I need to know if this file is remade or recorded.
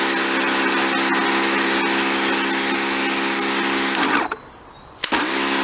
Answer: recorded